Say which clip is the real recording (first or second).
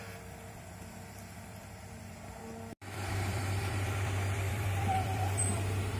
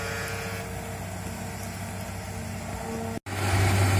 second